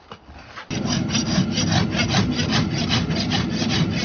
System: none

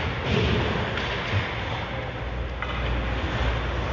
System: none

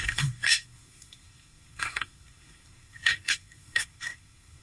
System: codec, SNAC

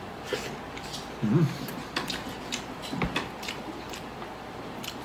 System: none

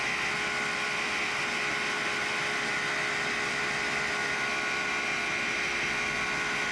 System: none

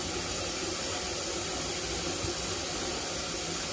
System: none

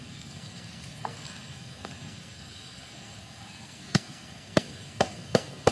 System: codec, SNAC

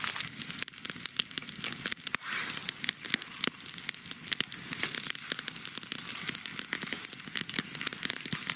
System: none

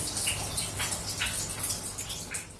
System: none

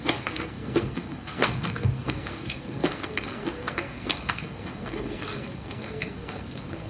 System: codec, SNAC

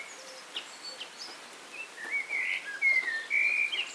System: none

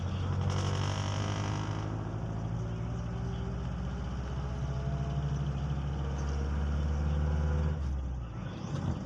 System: none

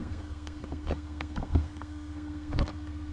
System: codec, SNAC